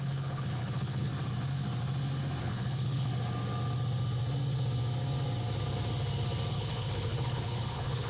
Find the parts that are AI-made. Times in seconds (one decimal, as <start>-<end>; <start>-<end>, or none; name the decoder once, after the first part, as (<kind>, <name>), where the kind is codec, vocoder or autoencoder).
0.0-1.1 (codec, HILCodec); 2.4-3.1; 6.5-8.1